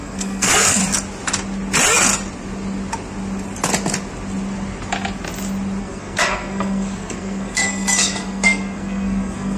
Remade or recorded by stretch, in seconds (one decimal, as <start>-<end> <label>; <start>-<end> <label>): 0.0-0.8 remade; 0.8-5.8 recorded; 5.8-9.6 remade